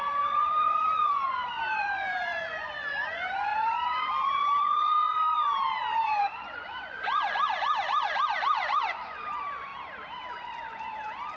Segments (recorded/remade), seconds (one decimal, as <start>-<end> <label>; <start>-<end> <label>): 0.0-9.7 remade; 9.7-10.3 recorded; 10.3-11.4 remade